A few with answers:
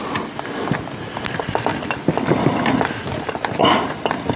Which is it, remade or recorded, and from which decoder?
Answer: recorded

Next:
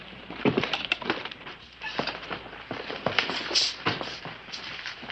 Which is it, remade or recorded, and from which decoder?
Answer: remade, vocoder, BigVGAN v2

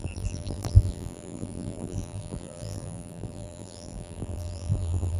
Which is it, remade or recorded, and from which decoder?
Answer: remade, vocoder, BigVGAN v2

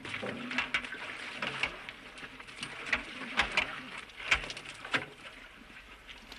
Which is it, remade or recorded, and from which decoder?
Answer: recorded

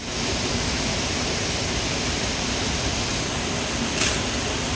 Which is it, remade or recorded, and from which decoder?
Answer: recorded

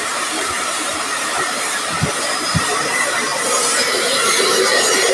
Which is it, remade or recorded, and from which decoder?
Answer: remade, vocoder, BigVGAN v2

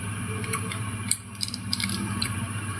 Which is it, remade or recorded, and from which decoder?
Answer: remade, vocoder, BigVGAN v2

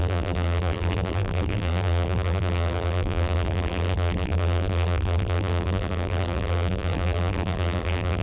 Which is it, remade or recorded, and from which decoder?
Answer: remade, vocoder, BigVGAN v2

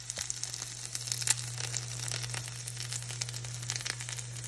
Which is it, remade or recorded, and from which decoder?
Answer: recorded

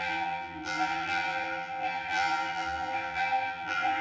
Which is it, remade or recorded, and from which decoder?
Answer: remade, vocoder, BigVGAN v2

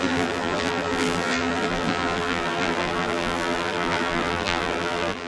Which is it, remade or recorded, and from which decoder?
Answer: remade, vocoder, BigVGAN v2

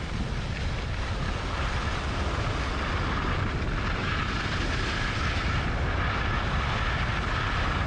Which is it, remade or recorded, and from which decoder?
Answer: recorded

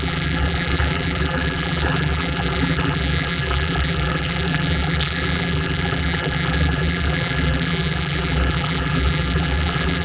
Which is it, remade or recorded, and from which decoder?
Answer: remade, vocoder, BigVGAN v2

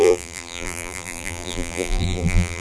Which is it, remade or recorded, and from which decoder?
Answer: remade, vocoder, BigVGAN v2